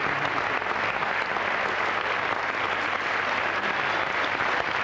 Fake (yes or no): no